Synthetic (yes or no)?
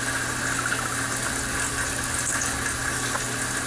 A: no